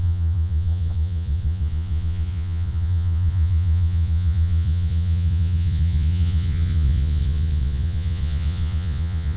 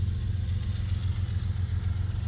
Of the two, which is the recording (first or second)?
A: second